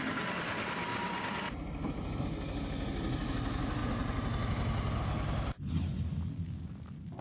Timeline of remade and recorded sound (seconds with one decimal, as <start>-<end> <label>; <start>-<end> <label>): 0.0-7.2 recorded